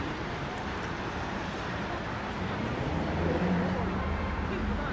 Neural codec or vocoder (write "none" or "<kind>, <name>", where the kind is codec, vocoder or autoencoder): vocoder, BigVGAN v2